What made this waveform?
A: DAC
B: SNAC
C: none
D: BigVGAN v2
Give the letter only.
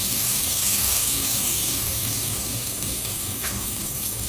A